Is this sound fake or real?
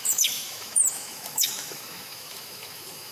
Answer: fake